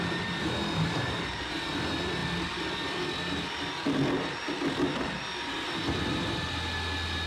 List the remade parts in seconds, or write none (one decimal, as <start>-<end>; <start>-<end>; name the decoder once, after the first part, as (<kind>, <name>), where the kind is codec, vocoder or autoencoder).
none